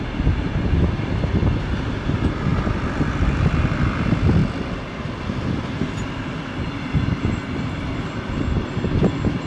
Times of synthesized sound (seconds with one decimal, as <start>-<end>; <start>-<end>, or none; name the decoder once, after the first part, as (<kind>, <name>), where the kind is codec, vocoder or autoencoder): none